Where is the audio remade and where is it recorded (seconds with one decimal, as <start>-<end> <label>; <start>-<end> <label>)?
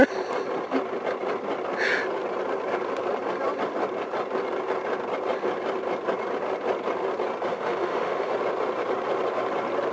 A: 0.0-7.5 recorded; 7.5-8.3 remade; 8.3-9.9 recorded